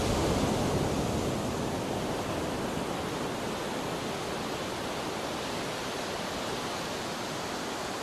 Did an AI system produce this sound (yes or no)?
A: no